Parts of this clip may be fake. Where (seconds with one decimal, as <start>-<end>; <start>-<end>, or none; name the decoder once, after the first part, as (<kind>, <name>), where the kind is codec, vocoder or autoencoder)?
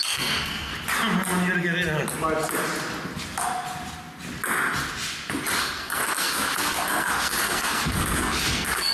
0.0-0.7 (codec, SNAC); 5.6-8.9